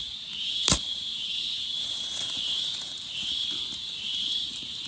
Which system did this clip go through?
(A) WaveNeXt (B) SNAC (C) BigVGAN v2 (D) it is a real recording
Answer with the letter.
C